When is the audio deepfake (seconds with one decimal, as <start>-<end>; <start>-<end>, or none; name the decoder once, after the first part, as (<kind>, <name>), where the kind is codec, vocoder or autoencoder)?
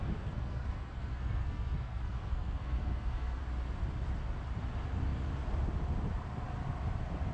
0.0-3.4 (codec, SNAC)